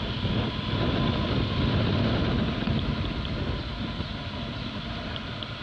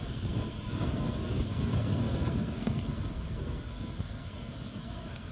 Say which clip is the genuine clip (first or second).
first